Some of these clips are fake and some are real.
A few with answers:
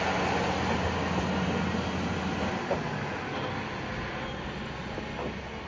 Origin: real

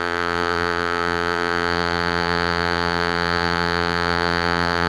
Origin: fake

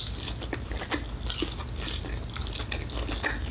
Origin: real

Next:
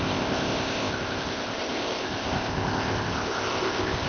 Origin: fake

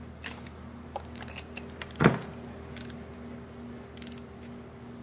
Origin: real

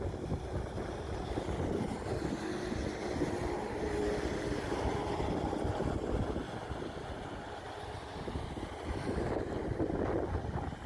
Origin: real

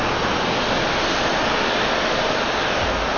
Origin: real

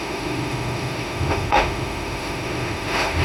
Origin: fake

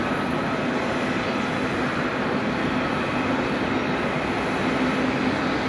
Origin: real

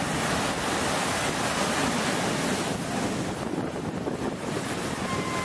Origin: real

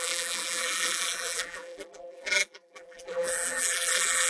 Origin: fake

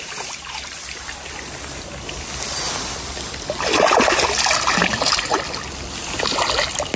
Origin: real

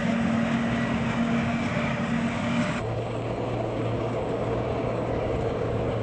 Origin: fake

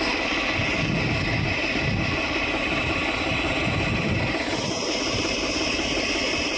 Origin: real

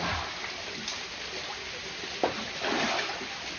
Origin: real